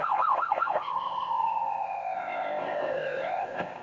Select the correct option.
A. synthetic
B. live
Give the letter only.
A